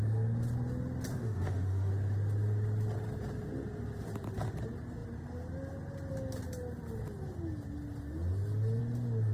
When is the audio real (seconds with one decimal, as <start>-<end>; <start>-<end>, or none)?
0.0-1.1; 1.9-9.3